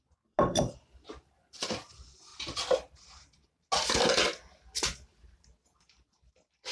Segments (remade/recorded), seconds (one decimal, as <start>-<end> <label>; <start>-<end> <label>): 0.0-6.7 recorded